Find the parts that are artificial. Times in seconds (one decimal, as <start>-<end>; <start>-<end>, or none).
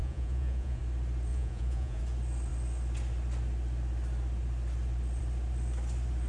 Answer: 0.0-0.8; 1.3-2.0